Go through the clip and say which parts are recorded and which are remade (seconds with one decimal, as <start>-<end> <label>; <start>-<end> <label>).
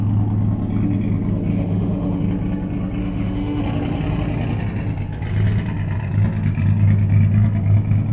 0.0-1.5 recorded; 1.5-2.2 remade; 2.2-3.0 recorded; 3.0-3.6 remade; 3.6-8.1 recorded